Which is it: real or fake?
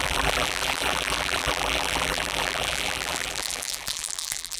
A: fake